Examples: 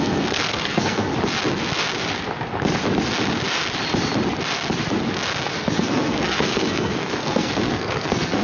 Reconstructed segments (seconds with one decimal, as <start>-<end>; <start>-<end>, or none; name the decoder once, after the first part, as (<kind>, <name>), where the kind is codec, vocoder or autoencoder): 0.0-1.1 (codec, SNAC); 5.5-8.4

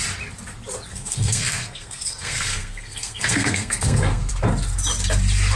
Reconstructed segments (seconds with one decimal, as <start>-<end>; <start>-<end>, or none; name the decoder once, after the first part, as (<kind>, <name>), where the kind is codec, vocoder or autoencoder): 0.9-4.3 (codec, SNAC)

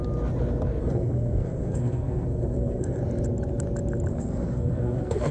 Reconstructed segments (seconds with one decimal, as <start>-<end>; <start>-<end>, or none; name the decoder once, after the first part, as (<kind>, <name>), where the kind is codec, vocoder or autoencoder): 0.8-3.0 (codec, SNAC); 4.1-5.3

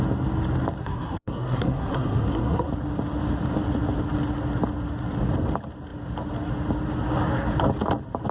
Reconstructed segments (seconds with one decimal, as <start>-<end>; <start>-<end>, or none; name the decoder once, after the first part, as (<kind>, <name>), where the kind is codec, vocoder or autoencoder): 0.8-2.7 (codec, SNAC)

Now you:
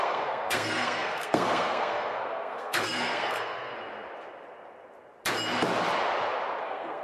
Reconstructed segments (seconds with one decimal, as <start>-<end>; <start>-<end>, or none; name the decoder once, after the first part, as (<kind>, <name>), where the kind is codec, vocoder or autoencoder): 0.0-3.7 (codec, SNAC); 6.6-7.0

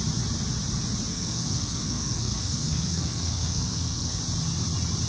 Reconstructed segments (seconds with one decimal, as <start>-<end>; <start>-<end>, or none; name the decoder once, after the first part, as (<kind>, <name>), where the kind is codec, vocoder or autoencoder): 1.1-4.2 (codec, SNAC)